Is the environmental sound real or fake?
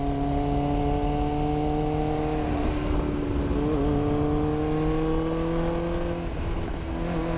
real